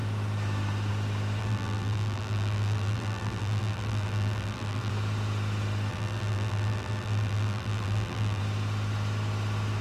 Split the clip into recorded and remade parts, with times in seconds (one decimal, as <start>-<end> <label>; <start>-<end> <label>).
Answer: 0.0-1.4 recorded; 1.4-4.9 remade; 4.9-5.9 recorded; 5.9-8.4 remade; 8.4-9.8 recorded